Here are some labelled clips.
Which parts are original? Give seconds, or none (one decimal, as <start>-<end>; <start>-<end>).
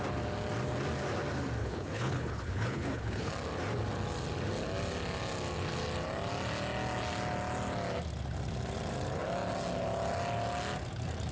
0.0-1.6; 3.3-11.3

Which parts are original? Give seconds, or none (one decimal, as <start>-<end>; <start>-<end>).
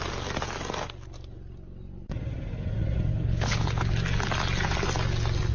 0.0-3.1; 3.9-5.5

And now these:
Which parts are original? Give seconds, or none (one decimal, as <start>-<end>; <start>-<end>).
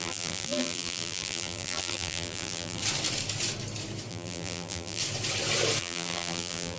2.8-4.1; 5.0-5.8